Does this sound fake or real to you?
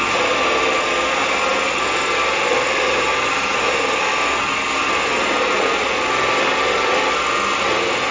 real